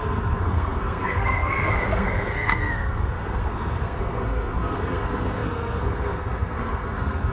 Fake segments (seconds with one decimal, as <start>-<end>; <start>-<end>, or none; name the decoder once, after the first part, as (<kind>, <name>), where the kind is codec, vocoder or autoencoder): 0.0-7.3 (codec, SNAC)